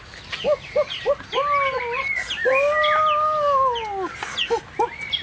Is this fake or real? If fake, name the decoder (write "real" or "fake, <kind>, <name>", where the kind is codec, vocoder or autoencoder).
real